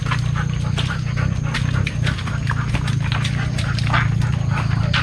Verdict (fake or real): real